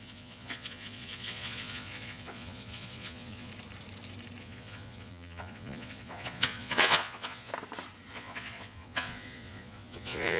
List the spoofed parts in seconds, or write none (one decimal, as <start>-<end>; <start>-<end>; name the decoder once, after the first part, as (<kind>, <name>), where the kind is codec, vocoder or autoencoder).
0.0-3.5 (vocoder, Vocos); 4.4-7.5; 8.1-10.4